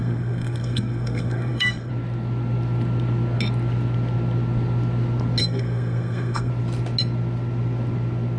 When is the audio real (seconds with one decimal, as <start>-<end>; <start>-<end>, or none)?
1.9-5.4; 6.5-8.4